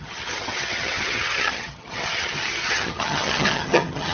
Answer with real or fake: fake